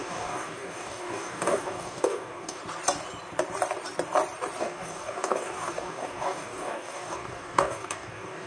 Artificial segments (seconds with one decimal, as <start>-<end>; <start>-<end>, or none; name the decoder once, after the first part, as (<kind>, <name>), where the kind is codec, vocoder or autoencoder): 0.0-2.6 (codec, DAC); 4.6-8.5